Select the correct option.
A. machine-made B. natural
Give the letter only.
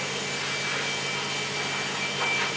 B